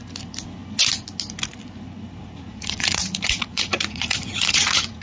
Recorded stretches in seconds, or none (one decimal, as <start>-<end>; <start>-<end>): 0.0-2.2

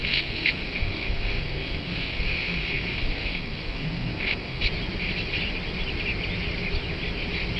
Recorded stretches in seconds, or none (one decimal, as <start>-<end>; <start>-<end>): 4.6-7.6

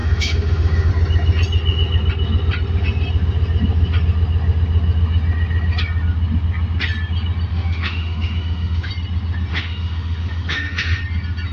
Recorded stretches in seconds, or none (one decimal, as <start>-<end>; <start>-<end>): 0.9-7.5; 8.9-9.5; 11.0-11.5

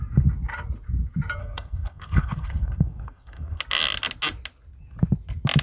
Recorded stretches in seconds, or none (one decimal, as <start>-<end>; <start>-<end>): 0.0-1.4; 3.6-5.6